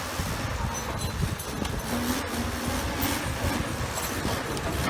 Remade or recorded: recorded